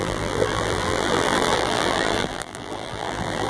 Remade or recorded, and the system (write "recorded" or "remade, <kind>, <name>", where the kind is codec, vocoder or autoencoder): remade, vocoder, BigVGAN v2